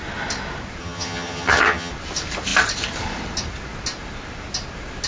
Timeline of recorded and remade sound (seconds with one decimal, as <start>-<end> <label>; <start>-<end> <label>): 0.0-0.8 recorded; 0.8-1.9 remade; 1.9-5.1 recorded